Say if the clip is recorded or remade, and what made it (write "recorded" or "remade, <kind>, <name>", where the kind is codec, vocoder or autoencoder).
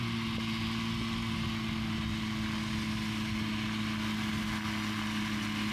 recorded